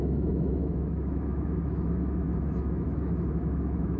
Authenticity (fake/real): fake